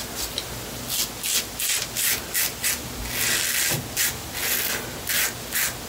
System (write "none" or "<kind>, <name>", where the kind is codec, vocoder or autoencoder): none